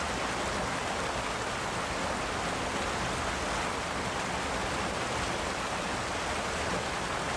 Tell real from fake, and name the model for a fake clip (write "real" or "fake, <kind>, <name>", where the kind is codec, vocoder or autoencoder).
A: real